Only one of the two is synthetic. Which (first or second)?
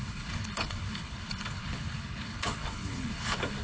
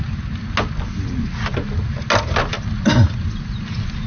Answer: first